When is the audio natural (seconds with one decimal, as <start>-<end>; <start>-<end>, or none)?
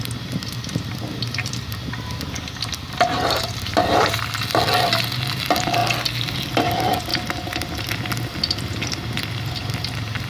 0.0-10.3